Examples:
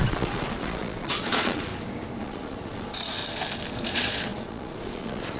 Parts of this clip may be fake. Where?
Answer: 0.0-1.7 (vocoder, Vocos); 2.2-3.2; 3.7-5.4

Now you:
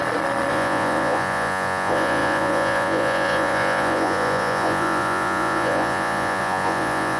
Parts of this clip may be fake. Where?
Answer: 0.5-7.2 (vocoder, Vocos)

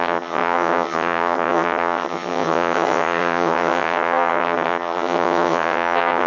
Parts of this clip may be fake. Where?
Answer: 0.0-6.3 (vocoder, HiFi-GAN)

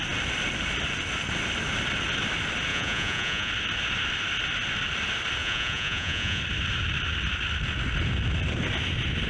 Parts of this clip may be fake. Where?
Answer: 2.7-3.5 (vocoder, Vocos); 5.4-6.4

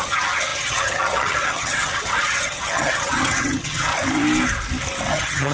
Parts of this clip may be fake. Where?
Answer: 0.0-3.9 (vocoder, HiFi-GAN); 5.1-5.5